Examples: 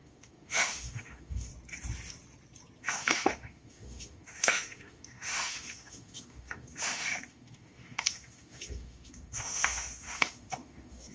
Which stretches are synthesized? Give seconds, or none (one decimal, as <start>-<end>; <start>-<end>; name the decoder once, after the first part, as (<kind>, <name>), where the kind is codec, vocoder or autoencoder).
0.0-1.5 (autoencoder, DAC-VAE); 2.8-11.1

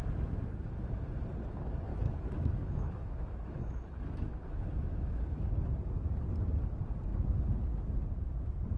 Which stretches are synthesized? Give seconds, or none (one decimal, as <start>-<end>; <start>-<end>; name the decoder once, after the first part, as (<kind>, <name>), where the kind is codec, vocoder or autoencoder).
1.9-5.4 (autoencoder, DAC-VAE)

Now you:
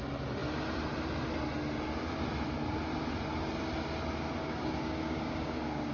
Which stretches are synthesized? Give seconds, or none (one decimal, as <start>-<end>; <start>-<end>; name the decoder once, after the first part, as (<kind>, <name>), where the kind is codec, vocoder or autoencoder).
4.4-5.9 (codec, DAC)